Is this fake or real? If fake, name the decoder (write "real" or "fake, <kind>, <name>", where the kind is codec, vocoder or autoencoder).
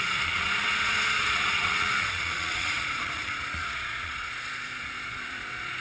fake, vocoder, Vocos